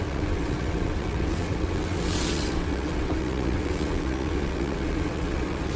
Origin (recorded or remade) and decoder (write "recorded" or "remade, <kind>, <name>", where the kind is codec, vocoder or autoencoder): remade, vocoder, WaveNeXt